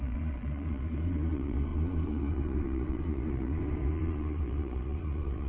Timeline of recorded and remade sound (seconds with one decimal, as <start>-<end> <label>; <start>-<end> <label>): 0.0-5.5 remade